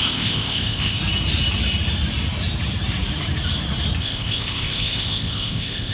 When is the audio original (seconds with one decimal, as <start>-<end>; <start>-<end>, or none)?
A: 1.0-4.0